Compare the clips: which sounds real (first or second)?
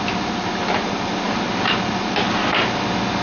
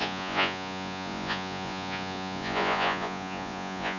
first